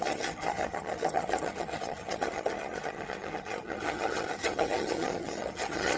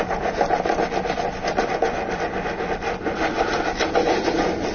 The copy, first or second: first